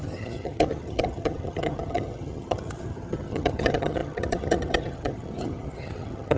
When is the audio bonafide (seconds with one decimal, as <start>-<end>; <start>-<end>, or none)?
none